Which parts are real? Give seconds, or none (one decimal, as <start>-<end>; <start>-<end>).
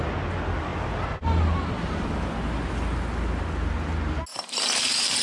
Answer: 0.0-4.3; 4.8-5.2